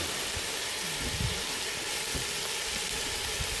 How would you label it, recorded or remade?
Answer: recorded